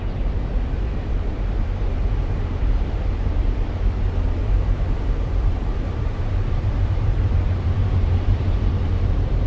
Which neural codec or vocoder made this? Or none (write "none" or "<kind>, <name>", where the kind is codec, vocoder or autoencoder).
vocoder, BigVGAN v2